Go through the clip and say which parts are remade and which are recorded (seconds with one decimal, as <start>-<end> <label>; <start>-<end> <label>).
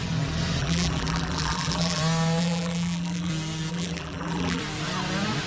0.0-0.6 recorded; 0.6-2.0 remade; 2.0-2.4 recorded; 2.4-3.3 remade; 3.3-3.7 recorded; 3.7-4.6 remade; 4.6-5.5 recorded